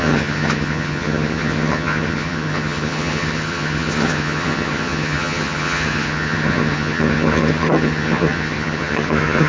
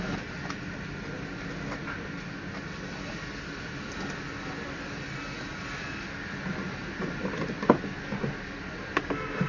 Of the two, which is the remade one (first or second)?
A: first